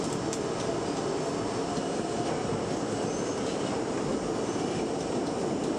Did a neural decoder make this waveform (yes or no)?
no